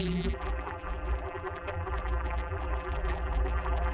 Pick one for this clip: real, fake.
fake